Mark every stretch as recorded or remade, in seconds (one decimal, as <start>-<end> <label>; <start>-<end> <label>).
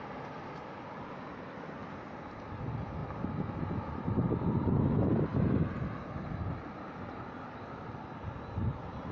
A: 0.0-9.1 recorded